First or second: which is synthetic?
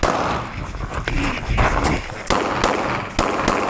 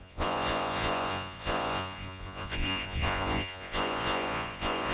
second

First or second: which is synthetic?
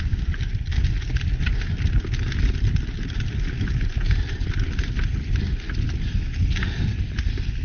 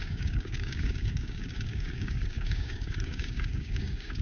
second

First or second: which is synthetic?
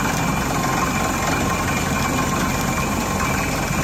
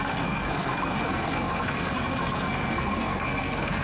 second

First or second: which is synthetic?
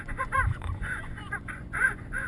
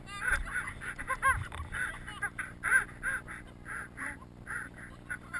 first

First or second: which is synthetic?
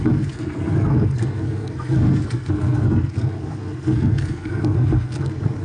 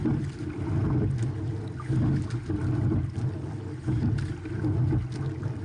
first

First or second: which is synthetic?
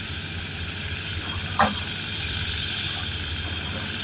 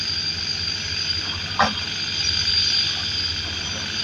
first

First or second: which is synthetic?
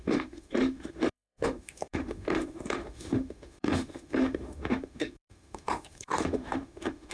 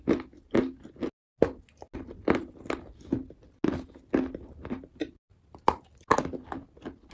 first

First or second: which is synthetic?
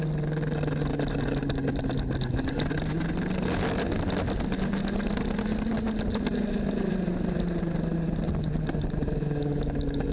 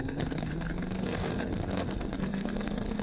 second